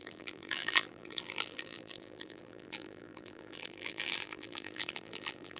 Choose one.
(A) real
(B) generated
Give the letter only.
B